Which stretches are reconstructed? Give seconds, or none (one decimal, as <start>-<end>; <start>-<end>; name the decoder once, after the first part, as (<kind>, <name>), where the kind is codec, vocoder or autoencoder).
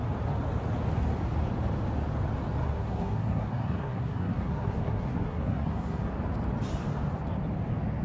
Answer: 2.6-6.1 (codec, SNAC)